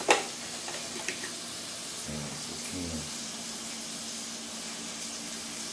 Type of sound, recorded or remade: recorded